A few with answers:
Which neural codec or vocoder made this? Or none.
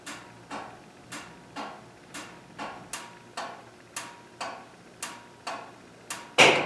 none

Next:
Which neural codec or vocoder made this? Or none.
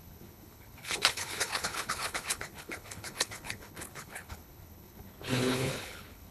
codec, HILCodec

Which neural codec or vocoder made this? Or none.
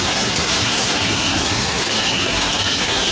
codec, SNAC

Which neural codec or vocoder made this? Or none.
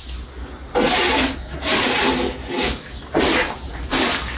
none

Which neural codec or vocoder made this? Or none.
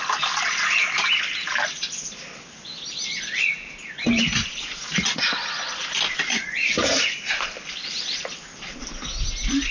none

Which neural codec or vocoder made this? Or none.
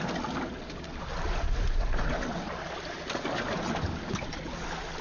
none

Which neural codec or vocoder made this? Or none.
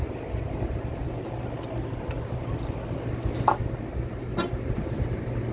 none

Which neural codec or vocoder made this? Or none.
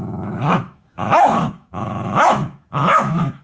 autoencoder, DAC-VAE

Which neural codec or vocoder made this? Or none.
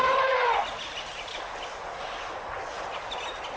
none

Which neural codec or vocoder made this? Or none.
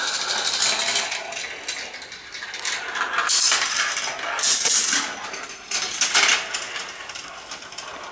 none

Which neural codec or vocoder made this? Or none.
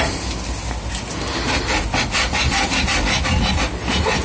none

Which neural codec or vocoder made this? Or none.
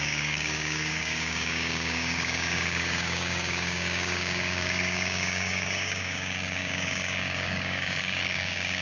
codec, DAC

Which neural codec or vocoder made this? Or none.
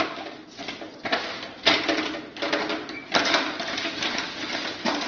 none